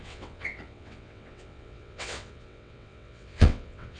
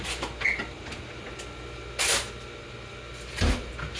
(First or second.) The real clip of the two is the second